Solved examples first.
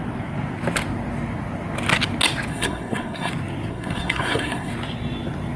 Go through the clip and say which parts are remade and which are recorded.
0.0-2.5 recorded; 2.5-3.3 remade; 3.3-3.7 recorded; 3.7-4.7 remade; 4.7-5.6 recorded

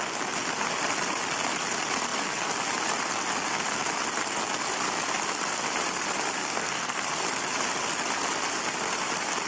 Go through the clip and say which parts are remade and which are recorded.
0.0-6.4 recorded; 6.4-7.0 remade; 7.0-9.5 recorded